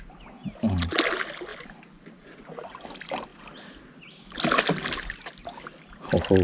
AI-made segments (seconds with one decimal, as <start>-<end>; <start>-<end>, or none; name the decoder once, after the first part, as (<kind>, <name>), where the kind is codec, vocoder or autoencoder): none